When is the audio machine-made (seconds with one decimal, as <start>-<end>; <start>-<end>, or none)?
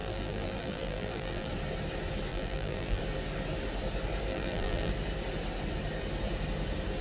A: 0.0-1.5; 2.3-3.0; 4.3-4.9